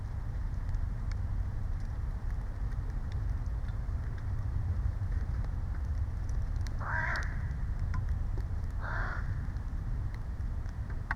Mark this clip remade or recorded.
remade